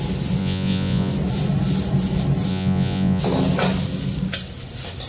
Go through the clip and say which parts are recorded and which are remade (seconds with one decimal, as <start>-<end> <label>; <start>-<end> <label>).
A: 0.0-0.4 recorded; 0.4-1.1 remade; 1.1-2.5 recorded; 2.5-3.2 remade; 3.2-5.1 recorded